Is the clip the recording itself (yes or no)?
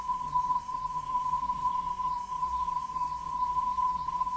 no